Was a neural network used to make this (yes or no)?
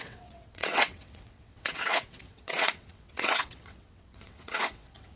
yes